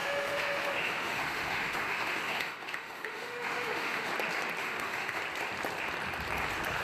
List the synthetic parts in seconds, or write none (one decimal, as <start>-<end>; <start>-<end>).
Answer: 0.0-4.1; 4.6-5.2